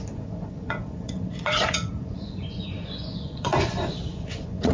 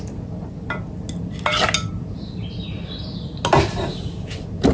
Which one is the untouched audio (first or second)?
second